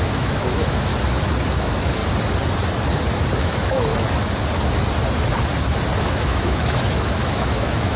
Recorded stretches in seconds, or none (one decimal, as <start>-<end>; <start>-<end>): 0.9-1.5; 2.0-3.4; 3.9-6.0